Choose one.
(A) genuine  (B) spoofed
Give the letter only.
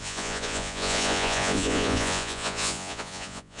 B